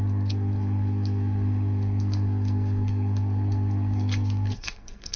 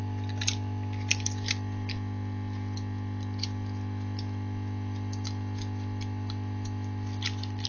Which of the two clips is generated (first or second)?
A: first